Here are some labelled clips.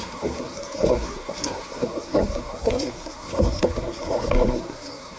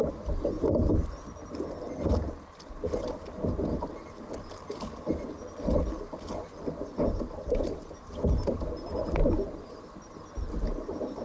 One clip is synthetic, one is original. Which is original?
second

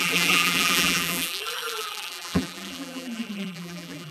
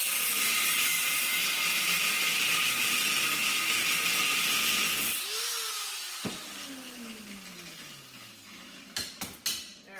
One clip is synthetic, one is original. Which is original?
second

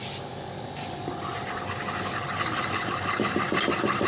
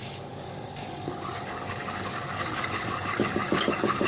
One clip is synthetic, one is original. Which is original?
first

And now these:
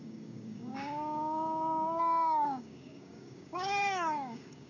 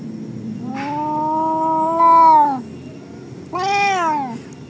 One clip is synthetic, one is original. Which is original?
second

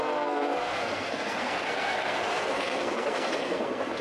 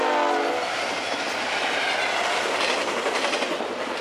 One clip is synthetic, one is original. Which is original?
second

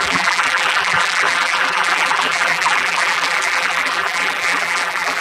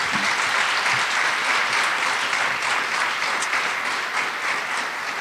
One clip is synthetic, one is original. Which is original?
second